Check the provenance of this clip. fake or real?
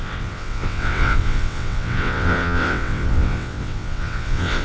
fake